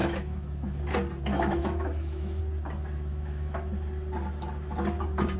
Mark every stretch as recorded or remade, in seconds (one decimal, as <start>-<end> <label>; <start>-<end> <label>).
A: 0.0-0.8 remade; 0.8-1.3 recorded; 1.3-2.4 remade; 2.4-3.1 recorded; 3.1-3.7 remade; 3.7-5.4 recorded